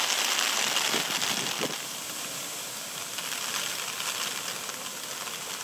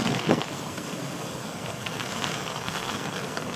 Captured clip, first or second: first